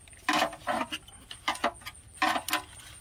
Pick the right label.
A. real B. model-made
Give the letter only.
A